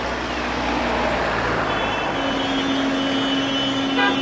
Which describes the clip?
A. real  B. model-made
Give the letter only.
A